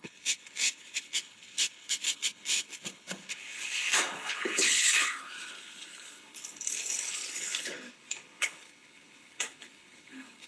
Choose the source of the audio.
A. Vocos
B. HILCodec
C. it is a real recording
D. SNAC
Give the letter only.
B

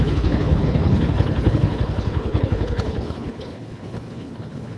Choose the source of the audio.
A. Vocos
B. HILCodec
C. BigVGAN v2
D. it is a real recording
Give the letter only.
B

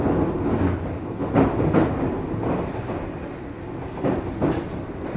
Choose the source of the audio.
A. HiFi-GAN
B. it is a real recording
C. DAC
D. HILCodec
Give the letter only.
B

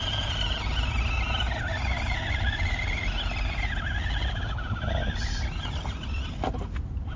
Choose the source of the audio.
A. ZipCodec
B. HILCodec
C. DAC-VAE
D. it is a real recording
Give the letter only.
D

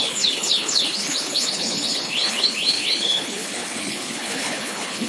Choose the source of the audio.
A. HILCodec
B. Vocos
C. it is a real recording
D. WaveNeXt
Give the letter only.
A